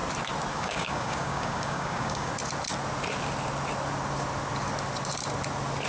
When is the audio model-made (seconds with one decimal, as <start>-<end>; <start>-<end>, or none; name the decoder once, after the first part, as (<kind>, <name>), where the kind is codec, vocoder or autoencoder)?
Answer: 0.5-2.3 (codec, DAC)